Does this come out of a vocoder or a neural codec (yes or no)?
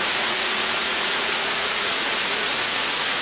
yes